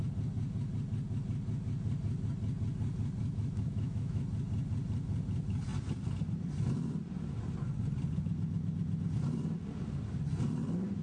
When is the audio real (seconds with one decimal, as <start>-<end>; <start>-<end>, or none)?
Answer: 0.0-3.2; 4.2-11.0